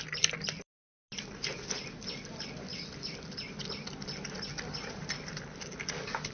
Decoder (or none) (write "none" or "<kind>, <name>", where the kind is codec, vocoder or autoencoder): none